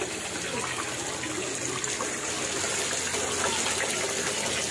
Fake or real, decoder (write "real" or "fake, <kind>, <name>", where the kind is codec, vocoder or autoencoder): real